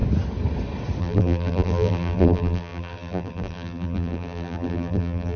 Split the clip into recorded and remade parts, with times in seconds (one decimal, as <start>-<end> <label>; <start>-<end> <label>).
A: 0.0-1.0 recorded; 1.0-5.4 remade